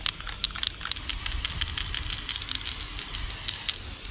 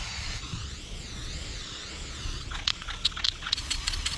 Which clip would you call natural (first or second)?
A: first